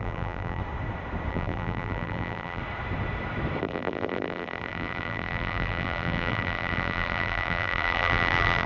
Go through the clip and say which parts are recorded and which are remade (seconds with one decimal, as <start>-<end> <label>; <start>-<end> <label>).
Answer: 0.0-0.6 remade; 0.6-1.3 recorded; 1.3-2.6 remade; 2.6-3.6 recorded; 3.6-8.7 remade

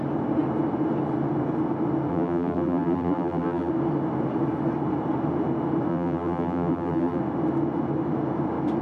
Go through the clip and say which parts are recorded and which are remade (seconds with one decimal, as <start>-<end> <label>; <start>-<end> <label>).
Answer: 0.0-2.1 recorded; 2.1-3.7 remade; 3.7-5.9 recorded; 5.9-7.2 remade; 7.2-8.8 recorded

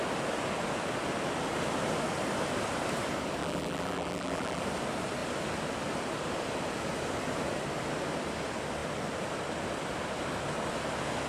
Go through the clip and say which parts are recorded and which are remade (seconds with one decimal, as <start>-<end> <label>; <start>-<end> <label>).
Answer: 0.0-3.4 recorded; 3.4-4.6 remade; 4.6-11.3 recorded

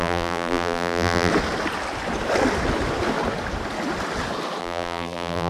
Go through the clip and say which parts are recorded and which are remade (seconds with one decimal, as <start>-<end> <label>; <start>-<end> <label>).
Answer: 0.0-1.3 remade; 1.3-4.6 recorded; 4.6-5.5 remade